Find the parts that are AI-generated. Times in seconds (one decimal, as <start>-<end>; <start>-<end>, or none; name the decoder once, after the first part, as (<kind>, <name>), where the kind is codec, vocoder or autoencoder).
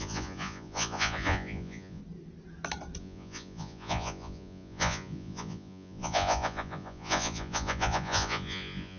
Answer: 0.0-2.0 (vocoder, Vocos); 3.0-9.0